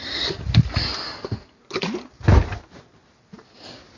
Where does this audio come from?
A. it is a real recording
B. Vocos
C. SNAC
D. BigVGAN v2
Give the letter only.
A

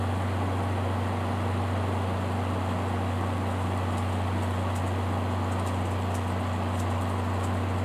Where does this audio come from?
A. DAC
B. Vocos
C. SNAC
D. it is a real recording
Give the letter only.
D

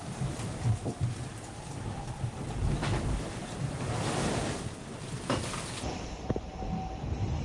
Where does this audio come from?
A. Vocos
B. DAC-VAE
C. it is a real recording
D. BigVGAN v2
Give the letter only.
C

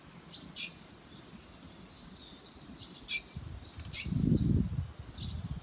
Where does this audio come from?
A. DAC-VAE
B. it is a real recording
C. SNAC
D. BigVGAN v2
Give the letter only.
B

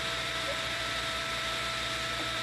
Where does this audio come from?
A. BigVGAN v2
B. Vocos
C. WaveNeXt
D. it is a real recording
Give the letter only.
A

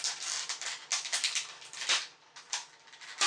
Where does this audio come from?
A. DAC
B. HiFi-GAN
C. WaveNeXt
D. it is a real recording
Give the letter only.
D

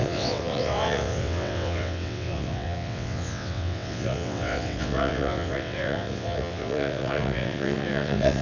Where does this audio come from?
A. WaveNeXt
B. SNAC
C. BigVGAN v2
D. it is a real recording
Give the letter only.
A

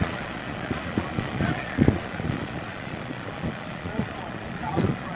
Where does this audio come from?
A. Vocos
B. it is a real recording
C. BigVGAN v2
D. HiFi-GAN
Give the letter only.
A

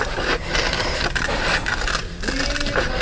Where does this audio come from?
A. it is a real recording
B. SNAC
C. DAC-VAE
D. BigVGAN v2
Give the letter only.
A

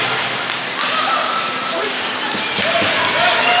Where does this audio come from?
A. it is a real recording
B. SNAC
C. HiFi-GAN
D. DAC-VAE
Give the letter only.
A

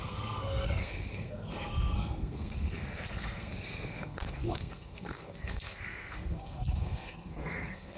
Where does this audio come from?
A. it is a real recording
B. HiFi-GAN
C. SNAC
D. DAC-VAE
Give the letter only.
C